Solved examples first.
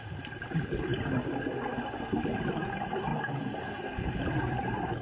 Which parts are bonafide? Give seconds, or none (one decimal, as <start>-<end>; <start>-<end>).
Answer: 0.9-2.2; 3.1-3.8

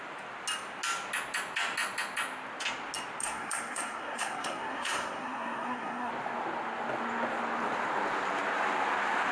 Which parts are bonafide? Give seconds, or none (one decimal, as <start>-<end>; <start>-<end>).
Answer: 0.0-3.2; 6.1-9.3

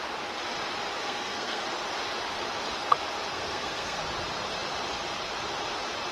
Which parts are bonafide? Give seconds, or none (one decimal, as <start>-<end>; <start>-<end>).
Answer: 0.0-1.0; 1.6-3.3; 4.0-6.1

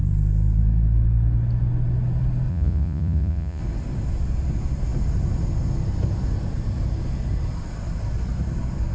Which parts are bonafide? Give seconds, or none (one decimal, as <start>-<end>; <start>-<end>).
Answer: 0.0-2.5; 3.6-8.9

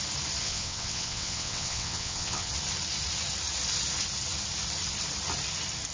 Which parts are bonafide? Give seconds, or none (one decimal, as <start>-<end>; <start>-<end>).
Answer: 0.0-0.4; 2.5-5.9

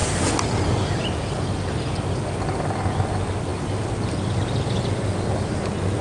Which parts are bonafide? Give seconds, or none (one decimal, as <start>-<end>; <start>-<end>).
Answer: 0.0-6.0

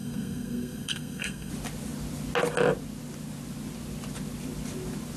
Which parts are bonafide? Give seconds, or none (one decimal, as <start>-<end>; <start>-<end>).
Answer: 1.5-5.2